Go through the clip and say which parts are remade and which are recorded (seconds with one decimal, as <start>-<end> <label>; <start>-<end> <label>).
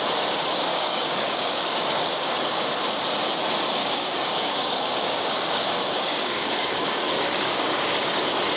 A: 0.0-0.7 recorded; 0.7-2.7 remade; 2.7-3.8 recorded; 3.8-8.2 remade; 8.2-8.6 recorded